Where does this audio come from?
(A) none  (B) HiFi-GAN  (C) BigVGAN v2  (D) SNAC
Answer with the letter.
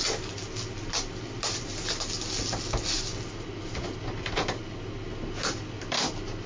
A